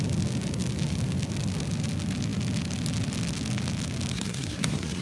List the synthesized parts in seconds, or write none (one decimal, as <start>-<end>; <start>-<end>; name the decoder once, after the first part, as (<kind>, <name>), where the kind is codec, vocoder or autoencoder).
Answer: 4.1-5.0 (codec, SNAC)